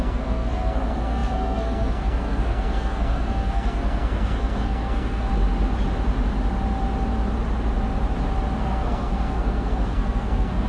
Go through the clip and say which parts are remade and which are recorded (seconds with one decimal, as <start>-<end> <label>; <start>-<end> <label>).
0.0-5.3 remade; 5.3-8.6 recorded; 8.6-10.7 remade